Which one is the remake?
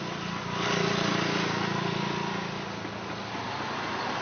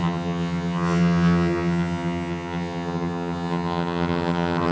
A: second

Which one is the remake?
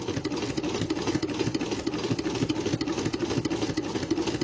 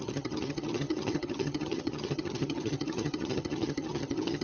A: second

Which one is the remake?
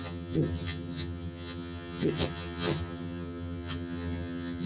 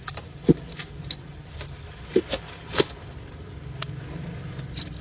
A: first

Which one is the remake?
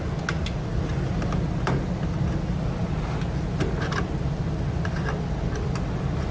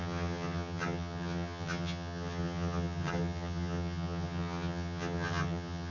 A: second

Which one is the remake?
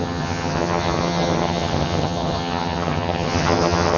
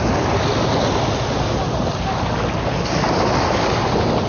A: first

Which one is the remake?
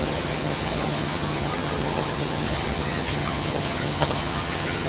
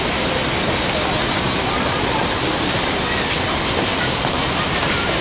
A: first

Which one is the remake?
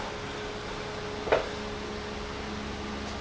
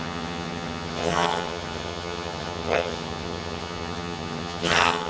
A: second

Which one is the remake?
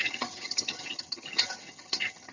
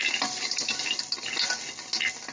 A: first